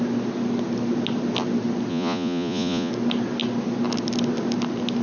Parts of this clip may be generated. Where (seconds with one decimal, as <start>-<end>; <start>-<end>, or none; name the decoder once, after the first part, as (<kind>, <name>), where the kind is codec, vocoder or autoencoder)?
1.9-2.9 (vocoder, Vocos)